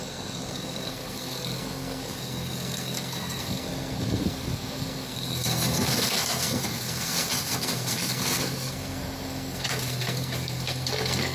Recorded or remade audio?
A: remade